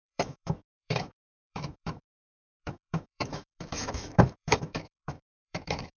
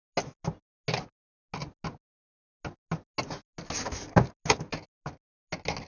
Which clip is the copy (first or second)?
first